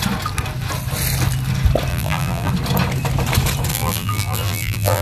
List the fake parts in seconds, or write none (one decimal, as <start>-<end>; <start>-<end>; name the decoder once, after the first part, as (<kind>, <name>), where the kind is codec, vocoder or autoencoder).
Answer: 1.9-2.5 (vocoder, BigVGAN v2); 3.7-5.0